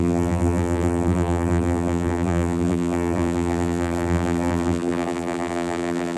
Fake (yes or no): yes